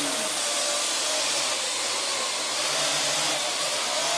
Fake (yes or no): no